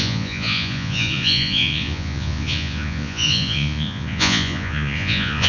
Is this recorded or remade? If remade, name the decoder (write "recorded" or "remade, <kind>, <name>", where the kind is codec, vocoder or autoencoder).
remade, vocoder, Vocos